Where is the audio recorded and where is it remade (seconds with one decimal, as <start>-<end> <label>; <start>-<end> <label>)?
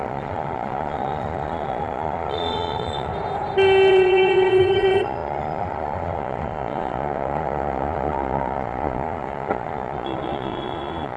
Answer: 0.0-3.1 remade; 3.1-3.9 recorded; 3.9-11.2 remade